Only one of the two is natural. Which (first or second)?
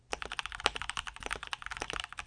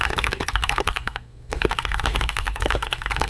first